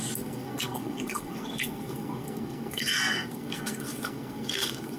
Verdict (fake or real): fake